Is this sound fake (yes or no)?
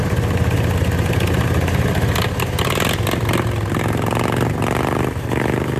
no